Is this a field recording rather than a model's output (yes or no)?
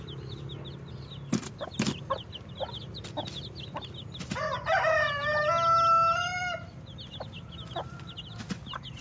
yes